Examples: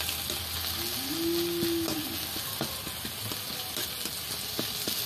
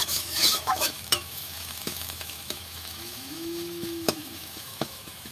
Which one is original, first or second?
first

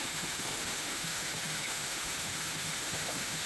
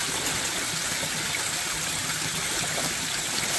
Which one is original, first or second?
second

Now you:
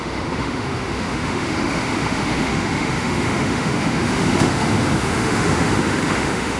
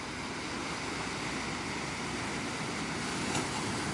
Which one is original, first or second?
second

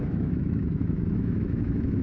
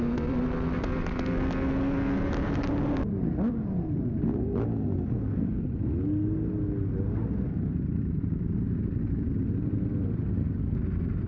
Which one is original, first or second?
second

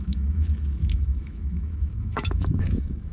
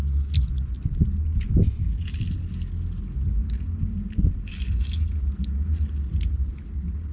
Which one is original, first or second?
second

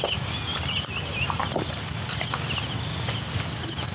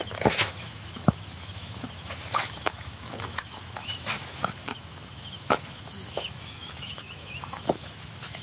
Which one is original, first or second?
first